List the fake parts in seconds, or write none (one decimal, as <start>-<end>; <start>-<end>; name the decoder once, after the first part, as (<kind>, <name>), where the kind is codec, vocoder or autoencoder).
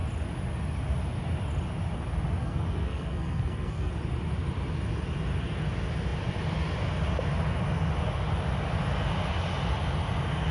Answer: 2.4-3.9 (codec, SNAC)